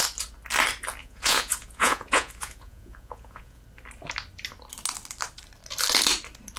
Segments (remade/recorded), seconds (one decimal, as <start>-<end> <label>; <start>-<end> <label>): 0.0-1.0 recorded; 1.0-3.6 remade; 3.6-6.6 recorded